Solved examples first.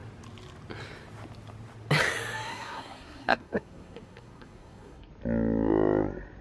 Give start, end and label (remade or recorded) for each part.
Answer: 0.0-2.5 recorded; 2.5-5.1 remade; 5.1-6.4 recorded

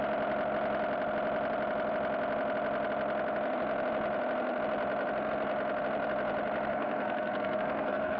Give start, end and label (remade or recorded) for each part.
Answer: 0.0-6.7 recorded; 6.7-8.2 remade

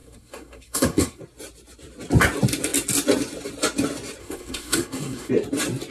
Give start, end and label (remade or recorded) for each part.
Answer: 0.0-1.2 remade; 1.2-4.2 recorded; 4.2-5.3 remade; 5.3-5.9 recorded

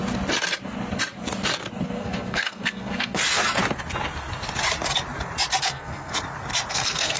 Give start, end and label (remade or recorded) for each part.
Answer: 0.0-2.0 recorded; 2.0-3.2 remade; 3.2-5.6 recorded; 5.6-6.1 remade; 6.1-6.7 recorded; 6.7-7.2 remade

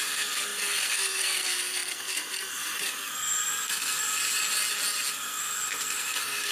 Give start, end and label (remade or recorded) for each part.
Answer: 0.0-4.2 remade; 4.2-5.1 recorded; 5.1-6.5 remade

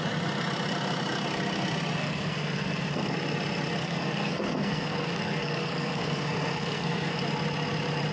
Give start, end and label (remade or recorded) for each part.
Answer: 0.0-2.0 recorded; 2.0-3.1 remade; 3.1-3.8 recorded; 3.8-7.2 remade; 7.2-8.1 recorded